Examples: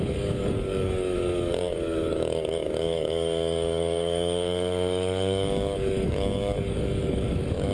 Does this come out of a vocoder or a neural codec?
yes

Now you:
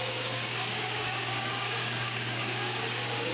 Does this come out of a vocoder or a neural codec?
yes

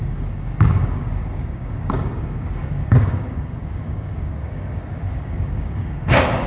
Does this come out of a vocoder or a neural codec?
yes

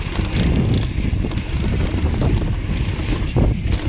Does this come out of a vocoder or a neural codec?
no